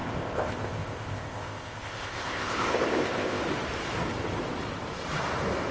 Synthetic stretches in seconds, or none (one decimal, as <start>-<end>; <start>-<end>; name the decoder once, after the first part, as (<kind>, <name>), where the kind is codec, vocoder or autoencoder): 0.0-3.4 (codec, ZipCodec)